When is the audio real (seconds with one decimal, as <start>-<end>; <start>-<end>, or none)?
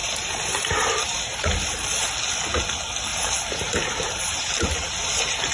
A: 2.0-3.1